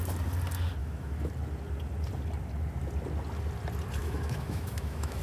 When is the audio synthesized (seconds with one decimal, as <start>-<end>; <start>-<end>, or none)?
0.8-1.3; 4.0-5.2